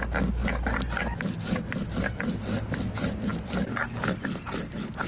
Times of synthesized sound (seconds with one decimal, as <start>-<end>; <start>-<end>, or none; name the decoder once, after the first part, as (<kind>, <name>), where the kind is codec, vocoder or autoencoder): 3.3-4.6 (vocoder, BigVGAN v2)